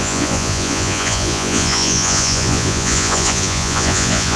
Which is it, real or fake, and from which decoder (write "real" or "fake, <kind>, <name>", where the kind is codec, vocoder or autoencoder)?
fake, vocoder, Vocos